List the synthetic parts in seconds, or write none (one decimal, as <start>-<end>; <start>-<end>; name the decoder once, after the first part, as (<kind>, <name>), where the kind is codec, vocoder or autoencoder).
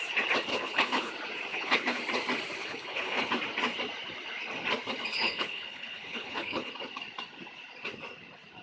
0.5-1.1 (codec, HILCodec); 1.5-2.0; 2.6-3.3; 5.1-6.7